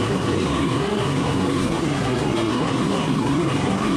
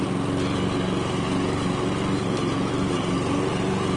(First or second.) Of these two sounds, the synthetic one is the first